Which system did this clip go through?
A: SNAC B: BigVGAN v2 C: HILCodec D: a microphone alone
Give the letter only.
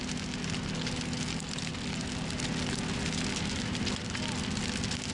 D